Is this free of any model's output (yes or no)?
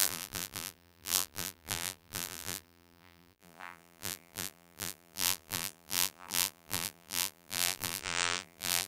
no